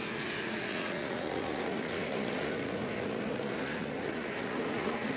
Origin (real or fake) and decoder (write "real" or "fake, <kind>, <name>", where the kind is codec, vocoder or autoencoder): fake, vocoder, Vocos